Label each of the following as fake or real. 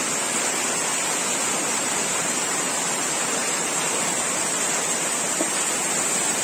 real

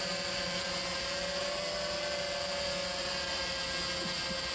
real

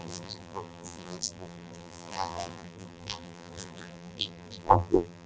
fake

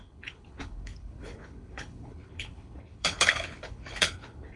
fake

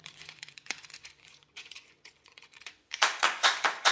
fake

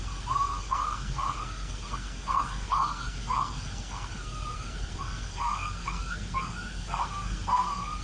fake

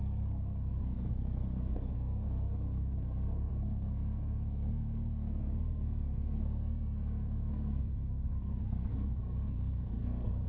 fake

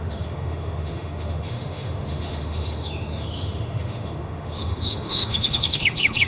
fake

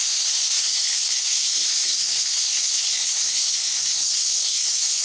fake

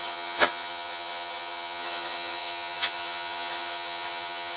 fake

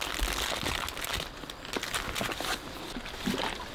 real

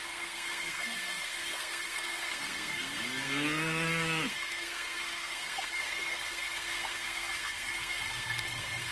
fake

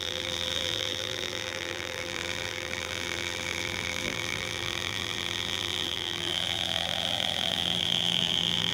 fake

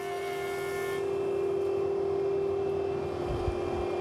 real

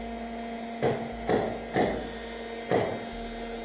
real